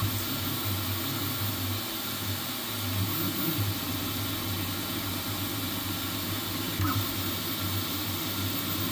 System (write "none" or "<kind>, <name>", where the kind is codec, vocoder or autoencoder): none